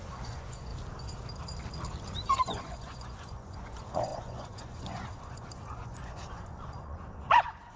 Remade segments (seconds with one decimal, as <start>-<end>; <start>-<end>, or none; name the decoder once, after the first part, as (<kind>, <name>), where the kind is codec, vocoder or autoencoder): 0.0-0.7 (vocoder, Vocos); 2.4-7.8